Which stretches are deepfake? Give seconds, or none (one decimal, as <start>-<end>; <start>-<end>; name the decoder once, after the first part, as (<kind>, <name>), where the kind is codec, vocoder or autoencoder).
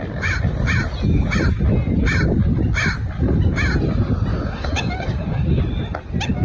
4.3-5.6 (codec, DAC)